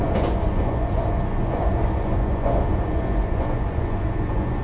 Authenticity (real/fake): fake